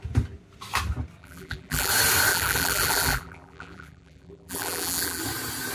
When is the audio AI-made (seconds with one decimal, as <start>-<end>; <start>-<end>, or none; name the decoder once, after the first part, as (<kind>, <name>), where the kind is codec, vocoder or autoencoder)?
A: 1.2-1.9 (vocoder, BigVGAN v2); 2.3-5.2